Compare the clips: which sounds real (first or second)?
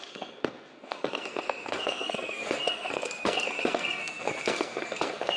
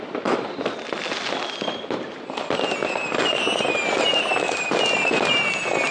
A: second